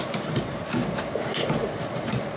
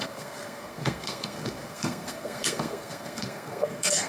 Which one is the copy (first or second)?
second